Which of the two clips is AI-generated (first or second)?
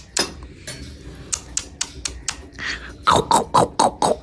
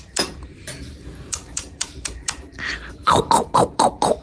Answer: second